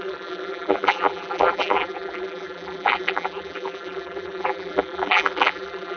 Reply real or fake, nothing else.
fake